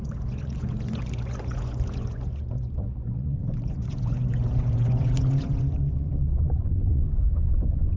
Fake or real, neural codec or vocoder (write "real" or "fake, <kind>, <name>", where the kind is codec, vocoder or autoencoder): fake, vocoder, Vocos